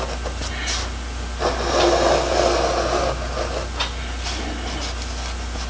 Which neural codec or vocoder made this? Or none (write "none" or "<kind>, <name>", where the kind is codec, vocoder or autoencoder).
none